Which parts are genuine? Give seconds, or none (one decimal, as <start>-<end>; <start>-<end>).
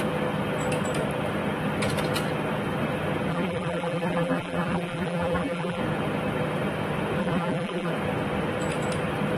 0.0-3.3; 5.8-7.2; 7.9-9.4